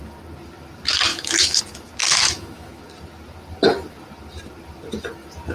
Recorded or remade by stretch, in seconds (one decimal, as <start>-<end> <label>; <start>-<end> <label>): 0.0-1.1 recorded; 1.1-1.6 remade; 1.6-2.0 recorded; 2.0-2.8 remade; 2.8-5.5 recorded